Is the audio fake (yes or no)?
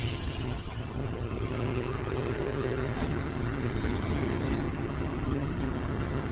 yes